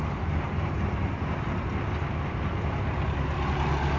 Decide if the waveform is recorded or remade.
recorded